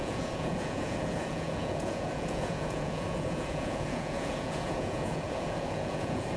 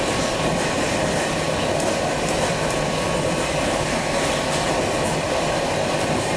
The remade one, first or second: first